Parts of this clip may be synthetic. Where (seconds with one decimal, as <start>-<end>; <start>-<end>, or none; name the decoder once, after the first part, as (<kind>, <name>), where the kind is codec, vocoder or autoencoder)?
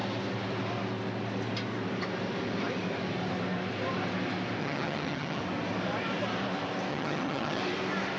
4.6-5.4 (vocoder, HiFi-GAN); 6.9-7.6